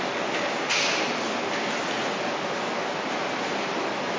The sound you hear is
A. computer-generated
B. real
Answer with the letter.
B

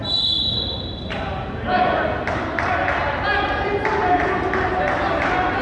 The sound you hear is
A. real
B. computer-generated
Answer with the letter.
A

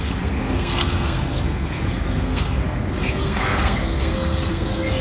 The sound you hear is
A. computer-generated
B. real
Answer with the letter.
A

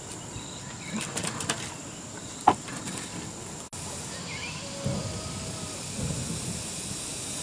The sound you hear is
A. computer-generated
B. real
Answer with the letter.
B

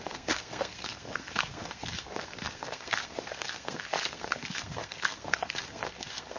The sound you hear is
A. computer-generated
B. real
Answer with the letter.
A